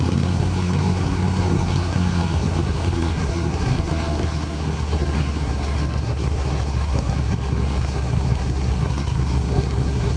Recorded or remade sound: remade